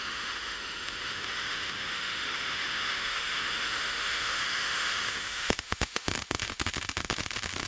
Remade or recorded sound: remade